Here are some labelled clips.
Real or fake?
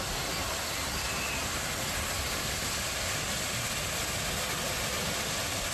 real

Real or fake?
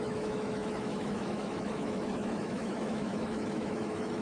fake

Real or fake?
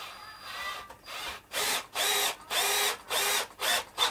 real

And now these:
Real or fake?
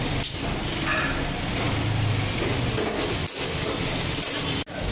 real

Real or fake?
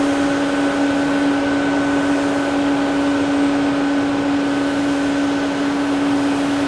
real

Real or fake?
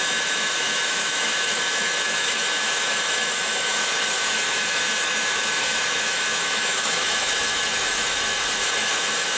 fake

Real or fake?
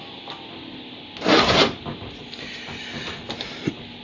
real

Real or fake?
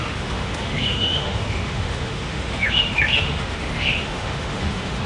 fake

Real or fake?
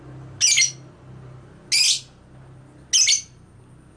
real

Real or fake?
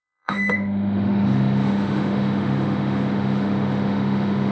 fake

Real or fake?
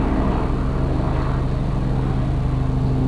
real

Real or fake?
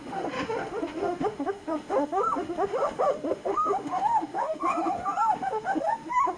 fake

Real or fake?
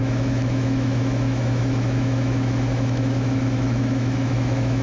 fake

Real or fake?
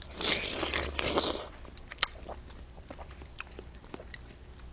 real